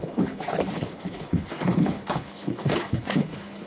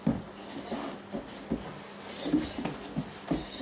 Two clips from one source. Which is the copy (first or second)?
first